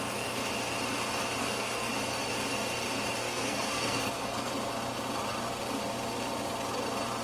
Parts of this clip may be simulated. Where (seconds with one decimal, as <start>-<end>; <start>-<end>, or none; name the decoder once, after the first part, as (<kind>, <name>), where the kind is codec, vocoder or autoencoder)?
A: 1.4-1.9 (codec, SNAC); 3.2-4.5